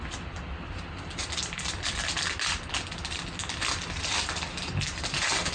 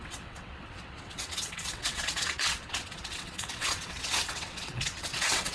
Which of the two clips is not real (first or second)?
second